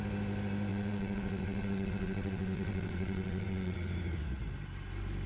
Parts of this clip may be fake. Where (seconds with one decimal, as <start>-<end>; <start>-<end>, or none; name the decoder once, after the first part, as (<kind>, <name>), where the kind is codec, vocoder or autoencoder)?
0.7-3.9 (vocoder, WaveNeXt)